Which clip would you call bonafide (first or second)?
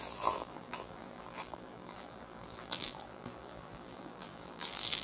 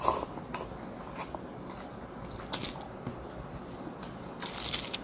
second